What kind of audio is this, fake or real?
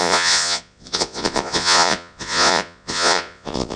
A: fake